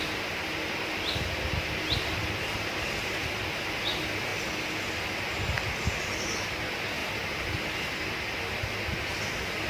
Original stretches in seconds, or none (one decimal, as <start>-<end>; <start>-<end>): 0.0-9.7